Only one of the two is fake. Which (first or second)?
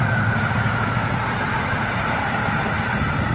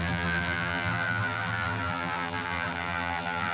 second